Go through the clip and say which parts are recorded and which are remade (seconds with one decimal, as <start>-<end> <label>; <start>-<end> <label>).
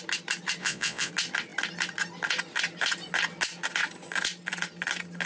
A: 0.0-0.6 recorded; 0.6-1.1 remade; 1.1-5.3 recorded